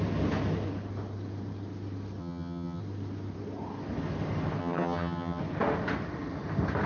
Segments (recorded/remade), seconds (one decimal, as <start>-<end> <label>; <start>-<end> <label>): 0.0-2.2 recorded; 2.2-2.8 remade; 2.8-4.6 recorded; 4.6-5.4 remade; 5.4-6.9 recorded